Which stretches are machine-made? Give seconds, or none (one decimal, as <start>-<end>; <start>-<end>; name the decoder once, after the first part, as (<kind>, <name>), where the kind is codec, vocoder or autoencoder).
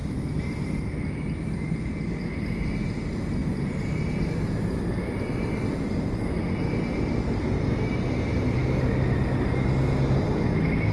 none